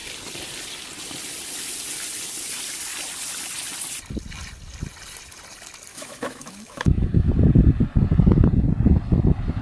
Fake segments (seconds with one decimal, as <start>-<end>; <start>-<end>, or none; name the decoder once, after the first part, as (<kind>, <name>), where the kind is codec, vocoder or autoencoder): 5.9-7.3 (autoencoder, DAC-VAE)